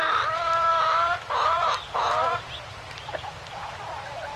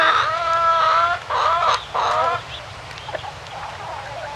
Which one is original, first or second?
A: second